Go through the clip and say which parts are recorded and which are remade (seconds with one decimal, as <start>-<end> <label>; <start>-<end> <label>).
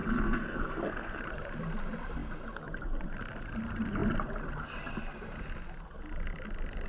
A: 0.0-1.2 remade; 1.2-6.9 recorded